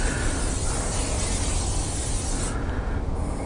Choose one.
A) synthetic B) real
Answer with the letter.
B